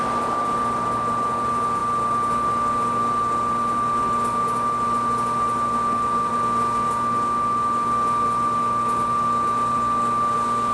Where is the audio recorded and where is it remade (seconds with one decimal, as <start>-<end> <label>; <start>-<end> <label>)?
0.0-10.7 recorded